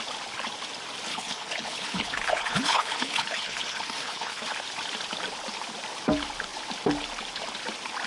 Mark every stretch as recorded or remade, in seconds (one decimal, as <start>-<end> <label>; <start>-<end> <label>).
0.0-1.1 recorded; 1.1-4.4 remade; 4.4-8.1 recorded